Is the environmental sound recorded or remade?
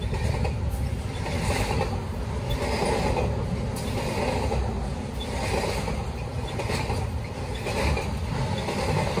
recorded